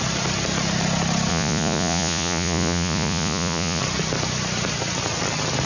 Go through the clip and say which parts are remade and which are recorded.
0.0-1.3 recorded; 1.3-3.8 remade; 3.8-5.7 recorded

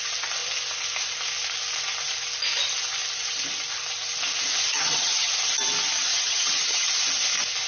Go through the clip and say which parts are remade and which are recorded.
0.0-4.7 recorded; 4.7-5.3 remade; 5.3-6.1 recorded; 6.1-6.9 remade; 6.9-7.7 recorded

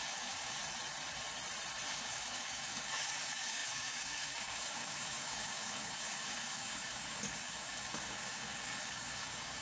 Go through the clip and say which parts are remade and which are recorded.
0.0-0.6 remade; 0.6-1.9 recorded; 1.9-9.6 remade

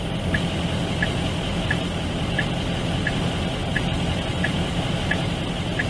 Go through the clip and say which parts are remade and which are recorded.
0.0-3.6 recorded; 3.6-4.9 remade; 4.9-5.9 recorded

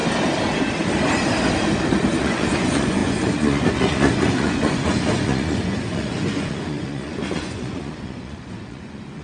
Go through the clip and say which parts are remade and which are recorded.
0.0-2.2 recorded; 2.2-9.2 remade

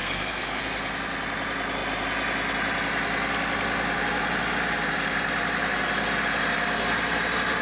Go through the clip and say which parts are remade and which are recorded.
0.0-0.6 remade; 0.6-7.6 recorded